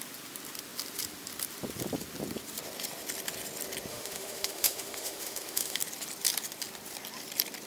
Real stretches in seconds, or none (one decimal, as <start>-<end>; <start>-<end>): 0.0-3.9; 5.8-7.7